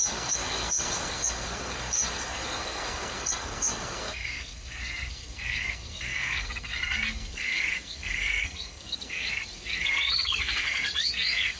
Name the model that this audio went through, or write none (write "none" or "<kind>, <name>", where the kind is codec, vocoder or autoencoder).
codec, SNAC